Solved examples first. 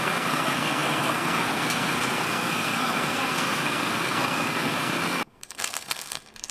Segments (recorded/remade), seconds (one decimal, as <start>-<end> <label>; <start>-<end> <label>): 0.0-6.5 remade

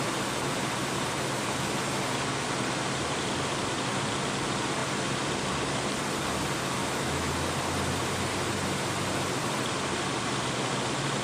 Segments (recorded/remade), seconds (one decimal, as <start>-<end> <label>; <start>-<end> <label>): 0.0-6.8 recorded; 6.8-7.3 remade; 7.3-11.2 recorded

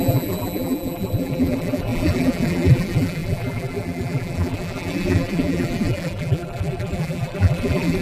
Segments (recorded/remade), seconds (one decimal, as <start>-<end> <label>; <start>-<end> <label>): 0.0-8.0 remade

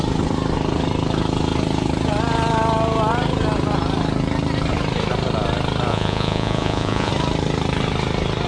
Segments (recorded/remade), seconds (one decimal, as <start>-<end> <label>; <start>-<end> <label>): 0.0-5.9 recorded; 5.9-7.1 remade; 7.1-8.5 recorded

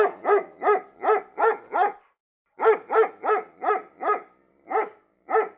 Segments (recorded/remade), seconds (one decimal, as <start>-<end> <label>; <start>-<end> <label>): 0.0-5.6 recorded